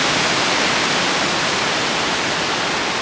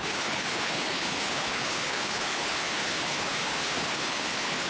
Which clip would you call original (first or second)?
first